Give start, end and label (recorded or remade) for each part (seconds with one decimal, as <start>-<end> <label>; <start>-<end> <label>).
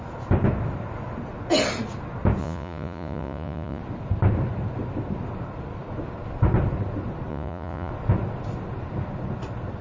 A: 0.0-2.4 recorded; 2.4-3.8 remade; 3.8-7.3 recorded; 7.3-7.9 remade; 7.9-9.8 recorded